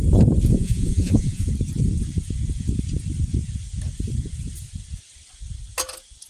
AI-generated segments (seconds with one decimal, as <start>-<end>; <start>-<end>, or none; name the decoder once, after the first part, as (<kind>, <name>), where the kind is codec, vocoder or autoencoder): 0.5-1.5 (vocoder, Vocos)